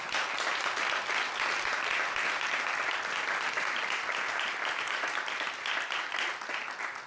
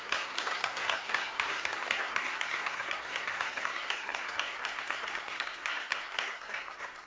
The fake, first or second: second